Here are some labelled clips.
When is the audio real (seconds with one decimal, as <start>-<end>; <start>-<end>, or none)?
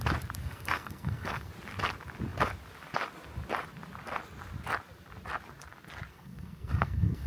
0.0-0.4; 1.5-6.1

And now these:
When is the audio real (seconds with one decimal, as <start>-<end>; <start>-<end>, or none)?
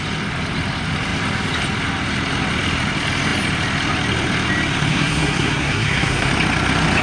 0.0-4.9; 6.3-7.0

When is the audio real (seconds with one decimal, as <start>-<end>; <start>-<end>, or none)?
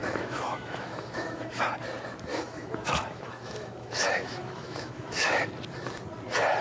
1.6-2.3; 5.5-6.6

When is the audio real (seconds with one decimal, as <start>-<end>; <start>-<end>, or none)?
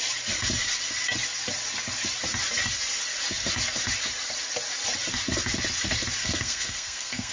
0.0-6.2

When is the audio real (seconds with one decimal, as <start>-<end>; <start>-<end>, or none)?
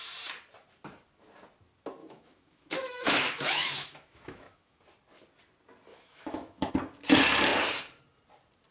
0.0-2.0; 4.8-5.9; 6.7-8.7